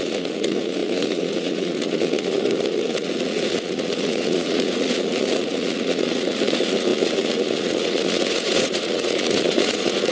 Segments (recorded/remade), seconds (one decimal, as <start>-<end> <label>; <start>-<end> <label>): 0.0-10.1 remade